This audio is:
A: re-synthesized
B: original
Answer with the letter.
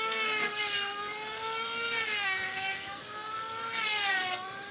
A